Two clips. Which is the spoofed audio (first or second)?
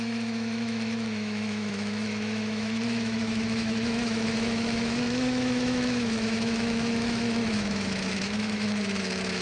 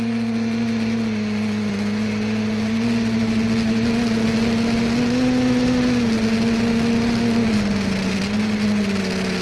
first